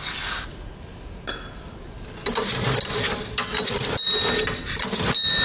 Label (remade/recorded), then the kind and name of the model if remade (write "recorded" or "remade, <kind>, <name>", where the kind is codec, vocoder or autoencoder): recorded